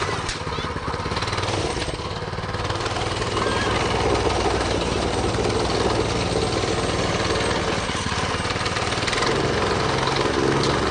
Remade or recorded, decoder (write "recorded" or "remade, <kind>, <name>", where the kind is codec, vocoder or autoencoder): recorded